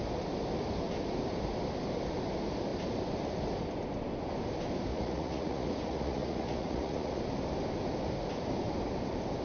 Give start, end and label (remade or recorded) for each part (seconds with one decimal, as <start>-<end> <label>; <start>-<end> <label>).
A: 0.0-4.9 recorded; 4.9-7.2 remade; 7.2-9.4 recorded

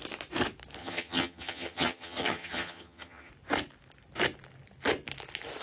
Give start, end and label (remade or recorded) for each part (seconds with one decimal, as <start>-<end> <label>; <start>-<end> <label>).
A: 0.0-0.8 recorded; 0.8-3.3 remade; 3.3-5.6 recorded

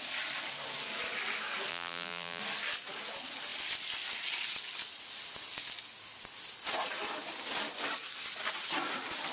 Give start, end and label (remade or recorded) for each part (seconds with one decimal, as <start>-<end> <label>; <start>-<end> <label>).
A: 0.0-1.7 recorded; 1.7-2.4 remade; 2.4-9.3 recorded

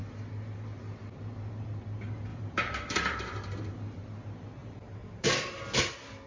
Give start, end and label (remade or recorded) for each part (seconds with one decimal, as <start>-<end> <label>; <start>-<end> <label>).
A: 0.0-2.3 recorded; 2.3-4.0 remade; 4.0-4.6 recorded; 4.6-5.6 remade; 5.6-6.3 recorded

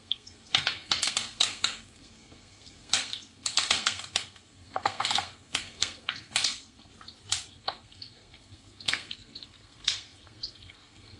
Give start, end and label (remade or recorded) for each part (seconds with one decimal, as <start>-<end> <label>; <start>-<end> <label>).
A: 0.0-6.9 remade; 6.9-7.5 recorded; 7.5-11.2 remade

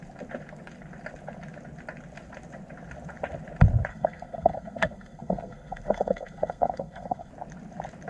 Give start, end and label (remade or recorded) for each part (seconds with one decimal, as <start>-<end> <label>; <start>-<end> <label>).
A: 0.0-3.9 recorded; 3.9-7.3 remade; 7.3-8.1 recorded

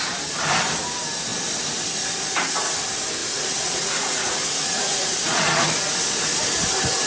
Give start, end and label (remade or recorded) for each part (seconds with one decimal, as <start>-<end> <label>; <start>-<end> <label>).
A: 0.0-3.2 recorded; 3.2-5.8 remade; 5.8-7.1 recorded